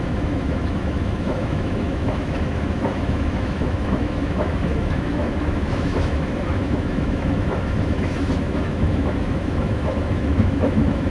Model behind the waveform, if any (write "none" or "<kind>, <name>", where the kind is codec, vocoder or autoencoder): autoencoder, DAC-VAE